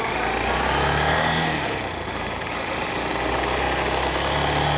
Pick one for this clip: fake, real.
real